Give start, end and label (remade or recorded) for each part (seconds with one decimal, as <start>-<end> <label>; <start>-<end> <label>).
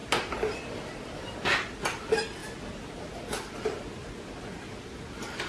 0.0-5.5 recorded